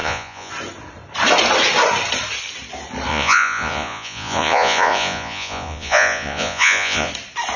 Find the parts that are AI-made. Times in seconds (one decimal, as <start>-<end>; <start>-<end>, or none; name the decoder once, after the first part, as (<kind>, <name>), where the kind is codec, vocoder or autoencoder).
0.0-0.5 (vocoder, Vocos); 3.1-7.1